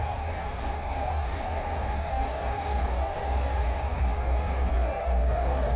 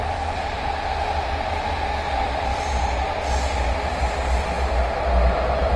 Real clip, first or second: second